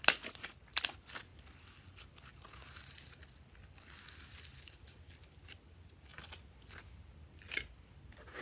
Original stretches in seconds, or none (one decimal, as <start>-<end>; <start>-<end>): 0.0-8.4